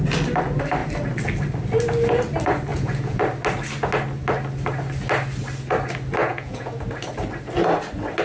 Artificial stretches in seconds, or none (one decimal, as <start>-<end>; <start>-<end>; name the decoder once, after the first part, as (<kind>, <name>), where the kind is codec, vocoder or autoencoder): 2.7-3.2 (vocoder, Vocos); 6.2-6.7